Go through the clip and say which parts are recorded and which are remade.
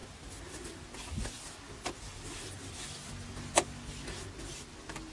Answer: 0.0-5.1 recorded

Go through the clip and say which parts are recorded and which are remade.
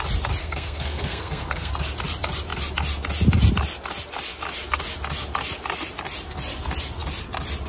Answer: 0.0-0.4 recorded; 0.4-1.7 remade; 1.7-7.7 recorded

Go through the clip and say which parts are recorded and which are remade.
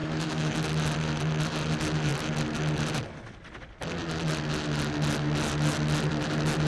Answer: 0.0-0.5 remade; 0.5-6.7 recorded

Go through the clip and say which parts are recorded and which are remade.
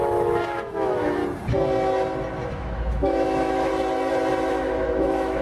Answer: 0.0-1.2 remade; 1.2-2.5 recorded; 2.5-3.7 remade; 3.7-4.5 recorded; 4.5-5.4 remade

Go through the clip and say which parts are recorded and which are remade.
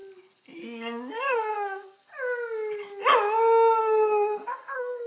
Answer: 0.0-1.1 recorded; 1.1-2.1 remade; 2.1-3.8 recorded; 3.8-5.1 remade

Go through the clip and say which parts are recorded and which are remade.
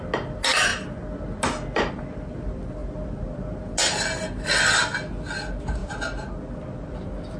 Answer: 0.0-7.4 recorded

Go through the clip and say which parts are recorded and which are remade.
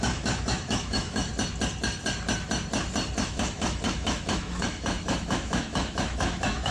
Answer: 0.0-1.3 remade; 1.3-3.2 recorded; 3.2-6.7 remade